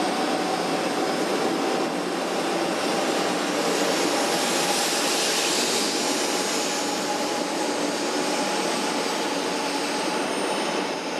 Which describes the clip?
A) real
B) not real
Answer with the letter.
A